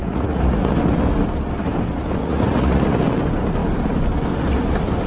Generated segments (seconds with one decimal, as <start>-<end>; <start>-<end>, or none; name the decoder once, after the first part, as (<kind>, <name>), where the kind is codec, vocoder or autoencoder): 0.0-0.7 (vocoder, Vocos); 2.2-3.0